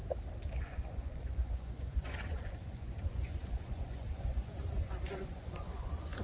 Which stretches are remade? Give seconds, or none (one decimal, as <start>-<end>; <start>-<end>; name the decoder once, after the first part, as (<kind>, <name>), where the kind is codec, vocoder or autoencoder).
0.6-6.2 (vocoder, Vocos)